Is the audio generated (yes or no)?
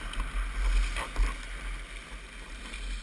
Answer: no